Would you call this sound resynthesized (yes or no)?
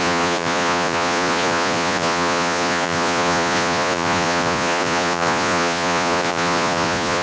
yes